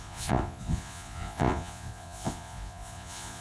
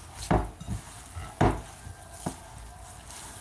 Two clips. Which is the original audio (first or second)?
second